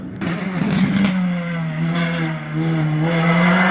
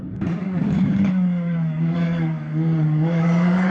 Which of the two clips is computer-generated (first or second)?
second